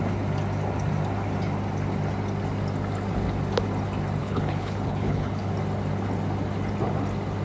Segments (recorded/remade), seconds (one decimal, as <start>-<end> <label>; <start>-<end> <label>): 0.0-4.2 recorded; 4.2-5.5 remade; 5.5-7.4 recorded